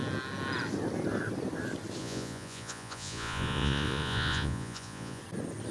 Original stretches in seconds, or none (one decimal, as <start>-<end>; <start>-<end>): 0.0-2.0; 5.2-5.7

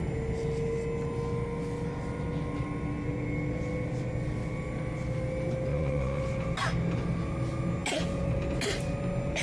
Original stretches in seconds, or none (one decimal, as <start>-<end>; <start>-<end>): 0.0-5.7; 6.2-9.4

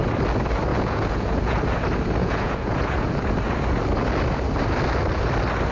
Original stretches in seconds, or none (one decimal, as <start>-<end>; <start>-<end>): 0.0-0.7; 1.6-2.2; 3.2-5.7

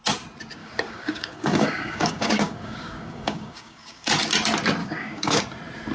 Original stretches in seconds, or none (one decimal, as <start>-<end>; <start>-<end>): 0.0-0.6; 4.1-4.8; 5.4-5.9

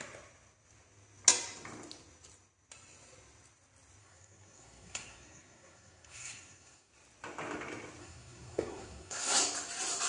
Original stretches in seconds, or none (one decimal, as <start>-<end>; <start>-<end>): 0.0-4.0; 6.9-8.0; 9.4-10.1

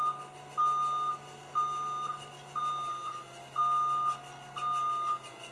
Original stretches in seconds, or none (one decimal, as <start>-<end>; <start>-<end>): 0.0-5.5

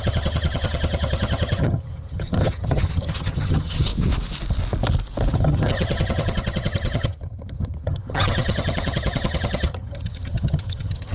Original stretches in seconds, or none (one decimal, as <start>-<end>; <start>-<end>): 3.9-5.3